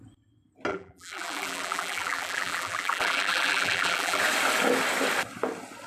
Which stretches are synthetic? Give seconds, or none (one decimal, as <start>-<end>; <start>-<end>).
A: 0.7-4.2